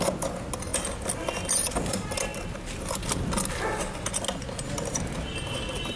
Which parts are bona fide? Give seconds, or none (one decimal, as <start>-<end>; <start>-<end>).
0.0-6.0

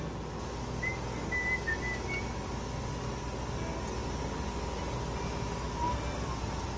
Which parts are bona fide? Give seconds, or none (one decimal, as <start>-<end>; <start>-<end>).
0.0-6.8

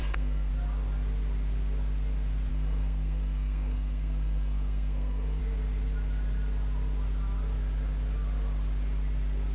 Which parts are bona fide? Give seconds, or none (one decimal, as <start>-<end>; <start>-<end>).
0.5-2.5; 5.4-9.5